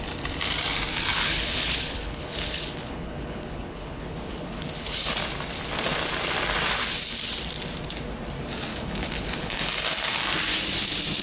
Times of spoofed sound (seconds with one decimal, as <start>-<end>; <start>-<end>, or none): 1.1-5.1; 8.7-9.6